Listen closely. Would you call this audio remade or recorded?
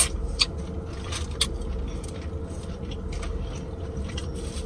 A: recorded